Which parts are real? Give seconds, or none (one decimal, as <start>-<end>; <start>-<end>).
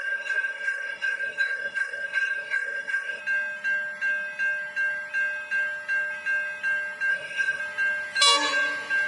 3.2-7.1; 7.6-9.1